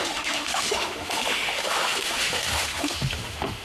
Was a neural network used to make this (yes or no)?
yes